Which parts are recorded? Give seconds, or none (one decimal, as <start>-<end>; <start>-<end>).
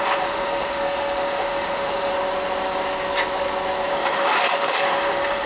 2.1-3.9